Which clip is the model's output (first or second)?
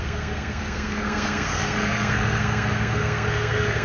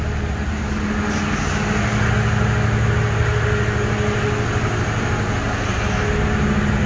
first